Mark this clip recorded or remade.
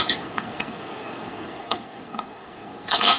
remade